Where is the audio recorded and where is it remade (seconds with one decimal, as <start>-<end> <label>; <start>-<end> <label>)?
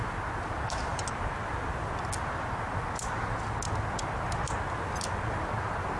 0.0-6.0 recorded